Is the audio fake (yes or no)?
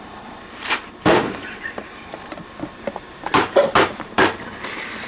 yes